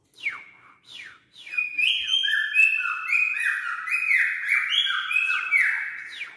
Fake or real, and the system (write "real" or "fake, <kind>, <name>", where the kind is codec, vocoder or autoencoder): real